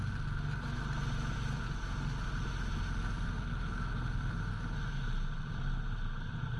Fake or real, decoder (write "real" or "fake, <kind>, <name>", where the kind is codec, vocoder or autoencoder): real